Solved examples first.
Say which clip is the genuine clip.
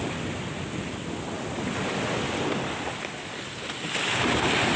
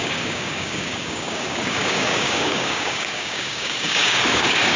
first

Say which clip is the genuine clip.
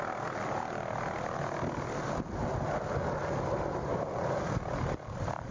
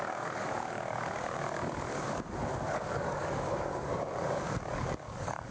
first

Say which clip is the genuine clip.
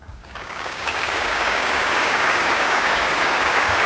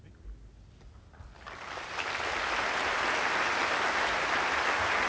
second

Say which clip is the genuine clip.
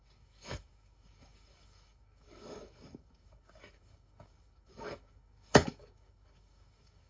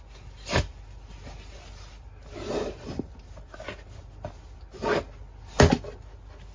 second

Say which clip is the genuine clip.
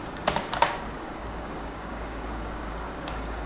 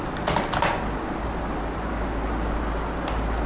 second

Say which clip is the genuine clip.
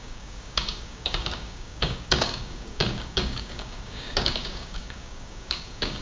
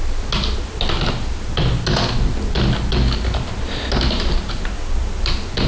second